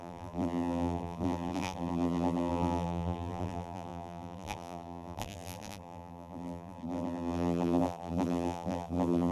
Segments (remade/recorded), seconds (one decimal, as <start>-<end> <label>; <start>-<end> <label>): 0.0-9.3 remade